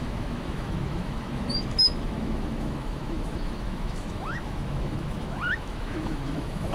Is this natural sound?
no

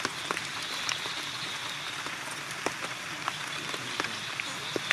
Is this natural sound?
yes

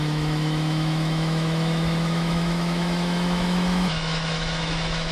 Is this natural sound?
no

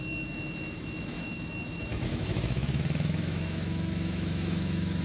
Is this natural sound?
no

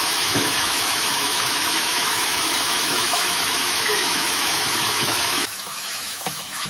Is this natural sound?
no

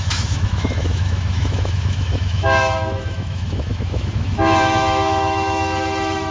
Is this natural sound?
no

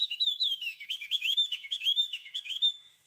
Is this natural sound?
no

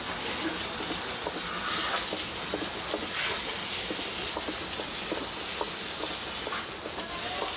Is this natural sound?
yes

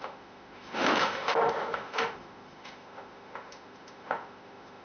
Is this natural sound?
no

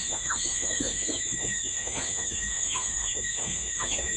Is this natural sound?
no